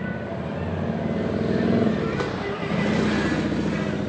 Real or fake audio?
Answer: real